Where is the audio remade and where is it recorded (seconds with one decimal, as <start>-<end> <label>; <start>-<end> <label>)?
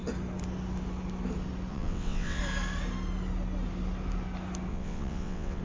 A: 0.0-1.7 recorded; 1.7-2.4 remade; 2.4-4.7 recorded; 4.7-5.6 remade